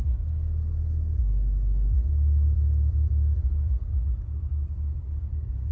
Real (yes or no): yes